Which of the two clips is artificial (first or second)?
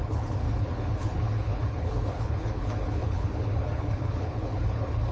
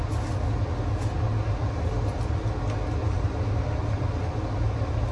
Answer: first